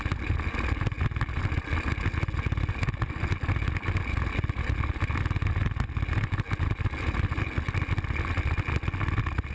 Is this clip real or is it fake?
real